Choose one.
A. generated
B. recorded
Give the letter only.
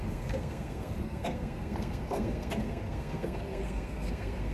A